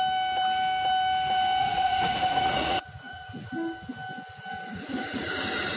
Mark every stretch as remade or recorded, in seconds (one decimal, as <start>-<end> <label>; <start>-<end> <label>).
0.0-1.6 recorded; 1.6-3.5 remade; 3.5-4.7 recorded; 4.7-5.8 remade